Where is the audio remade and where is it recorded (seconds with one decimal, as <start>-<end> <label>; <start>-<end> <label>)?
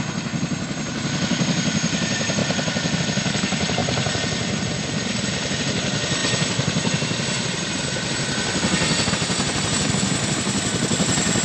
0.0-11.4 recorded